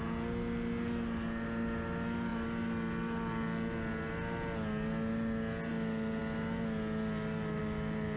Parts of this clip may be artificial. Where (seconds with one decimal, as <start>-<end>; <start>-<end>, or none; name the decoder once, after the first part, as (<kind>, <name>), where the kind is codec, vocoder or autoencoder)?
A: none

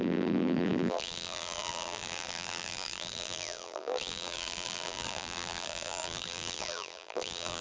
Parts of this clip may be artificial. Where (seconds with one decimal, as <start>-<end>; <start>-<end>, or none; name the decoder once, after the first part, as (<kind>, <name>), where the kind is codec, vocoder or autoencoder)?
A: 0.0-7.6 (vocoder, BigVGAN v2)

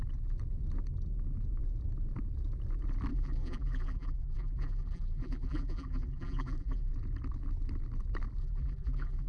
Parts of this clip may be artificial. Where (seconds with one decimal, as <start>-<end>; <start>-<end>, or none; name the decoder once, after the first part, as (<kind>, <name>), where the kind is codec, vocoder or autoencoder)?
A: 3.1-6.9 (vocoder, BigVGAN v2); 8.4-9.3